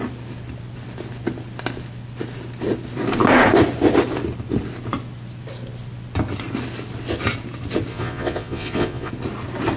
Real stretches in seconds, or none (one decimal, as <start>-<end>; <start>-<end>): 0.0-7.9; 9.1-9.8